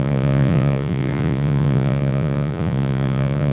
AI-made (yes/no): yes